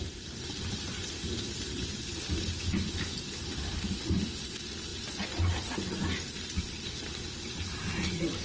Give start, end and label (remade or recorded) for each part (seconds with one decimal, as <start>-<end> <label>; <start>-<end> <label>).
0.0-8.4 recorded